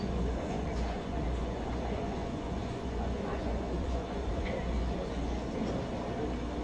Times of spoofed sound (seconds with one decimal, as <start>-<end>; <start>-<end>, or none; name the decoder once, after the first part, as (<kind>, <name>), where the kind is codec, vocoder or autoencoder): 0.0-5.6 (vocoder, Vocos)